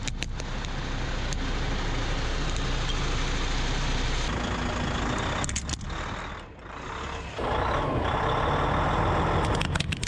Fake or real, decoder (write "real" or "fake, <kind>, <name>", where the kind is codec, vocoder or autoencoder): real